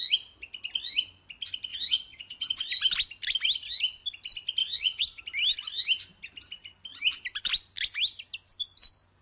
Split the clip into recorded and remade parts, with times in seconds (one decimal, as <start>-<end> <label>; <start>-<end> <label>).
0.0-1.7 recorded; 1.7-2.5 remade; 2.5-4.6 recorded; 4.6-5.2 remade; 5.2-9.2 recorded